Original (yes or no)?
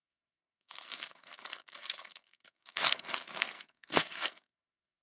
no